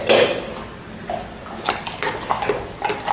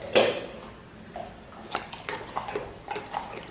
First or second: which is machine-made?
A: second